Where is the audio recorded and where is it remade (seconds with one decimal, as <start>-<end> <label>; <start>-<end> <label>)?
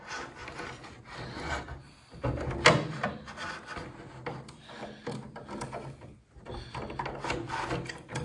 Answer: 0.0-0.4 recorded; 0.4-1.9 remade; 1.9-8.2 recorded